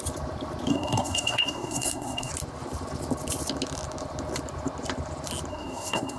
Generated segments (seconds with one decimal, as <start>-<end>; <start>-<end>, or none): 0.7-2.3; 5.5-6.2